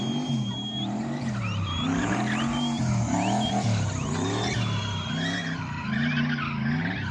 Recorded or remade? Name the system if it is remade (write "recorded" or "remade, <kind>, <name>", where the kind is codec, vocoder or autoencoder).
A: recorded